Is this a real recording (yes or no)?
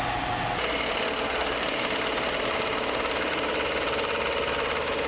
yes